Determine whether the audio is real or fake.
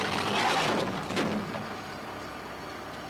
real